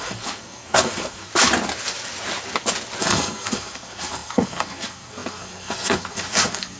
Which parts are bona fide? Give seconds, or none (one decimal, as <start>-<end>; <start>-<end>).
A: 1.3-3.0